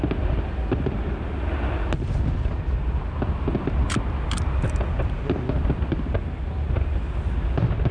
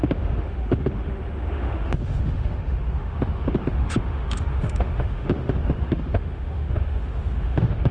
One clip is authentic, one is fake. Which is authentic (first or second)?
first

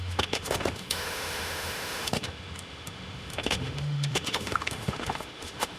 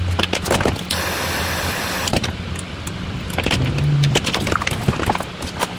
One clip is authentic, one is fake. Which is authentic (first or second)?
second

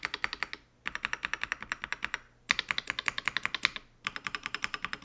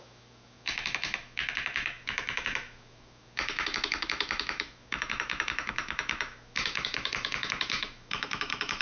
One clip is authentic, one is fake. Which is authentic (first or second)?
first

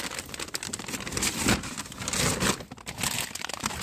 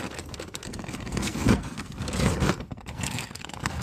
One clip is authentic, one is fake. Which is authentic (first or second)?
first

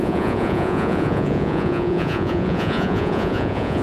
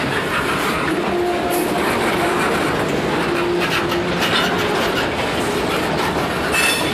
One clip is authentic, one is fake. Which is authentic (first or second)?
second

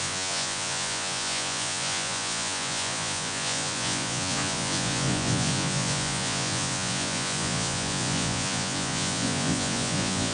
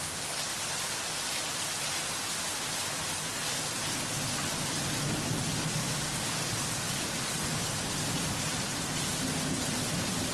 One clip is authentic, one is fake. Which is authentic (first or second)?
second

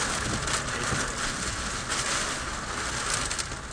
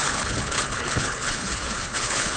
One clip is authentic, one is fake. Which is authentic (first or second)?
first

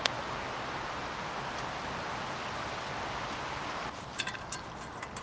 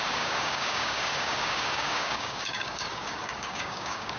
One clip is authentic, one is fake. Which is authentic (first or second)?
first